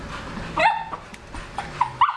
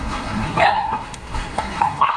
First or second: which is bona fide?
first